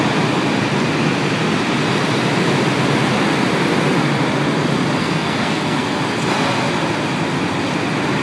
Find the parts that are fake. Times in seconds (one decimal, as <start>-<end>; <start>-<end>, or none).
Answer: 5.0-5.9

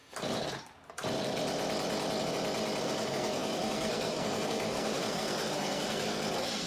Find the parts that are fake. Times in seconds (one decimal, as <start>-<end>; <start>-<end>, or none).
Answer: 2.8-6.7

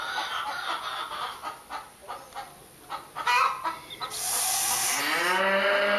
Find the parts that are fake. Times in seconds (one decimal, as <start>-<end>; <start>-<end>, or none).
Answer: none

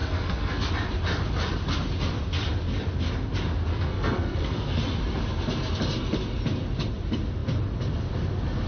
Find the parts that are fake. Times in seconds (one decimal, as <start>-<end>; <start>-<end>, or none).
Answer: 0.0-0.7; 3.7-4.8

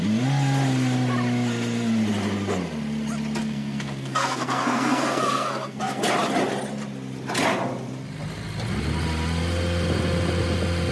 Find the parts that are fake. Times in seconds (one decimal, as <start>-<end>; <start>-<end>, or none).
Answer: 3.4-6.0

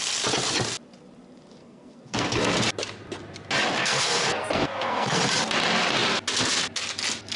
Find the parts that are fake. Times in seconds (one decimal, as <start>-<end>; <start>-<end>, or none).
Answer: 1.6-2.4; 3.8-5.2

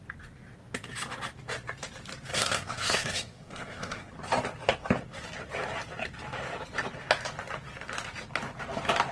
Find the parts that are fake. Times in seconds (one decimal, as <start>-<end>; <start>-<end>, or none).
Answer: 2.3-4.1